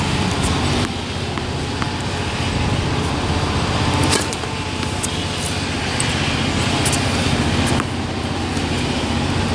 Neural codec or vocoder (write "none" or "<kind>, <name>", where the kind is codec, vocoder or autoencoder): none